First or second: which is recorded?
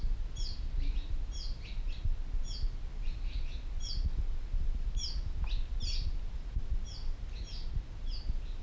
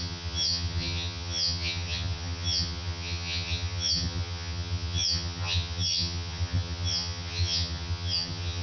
first